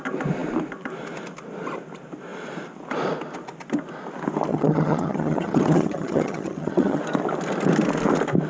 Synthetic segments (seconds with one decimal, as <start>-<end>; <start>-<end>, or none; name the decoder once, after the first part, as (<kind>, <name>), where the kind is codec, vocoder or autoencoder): 4.5-7.0 (vocoder, HiFi-GAN)